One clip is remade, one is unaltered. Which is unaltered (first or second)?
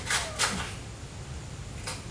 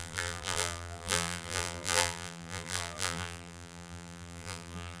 first